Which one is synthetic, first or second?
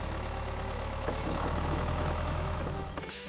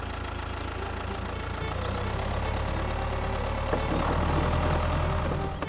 first